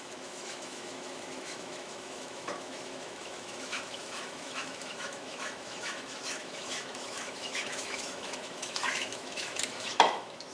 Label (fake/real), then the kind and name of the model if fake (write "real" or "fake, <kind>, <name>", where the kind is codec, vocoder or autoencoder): fake, autoencoder, DAC-VAE